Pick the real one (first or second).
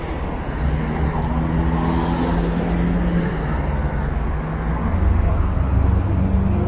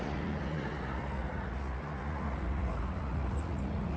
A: first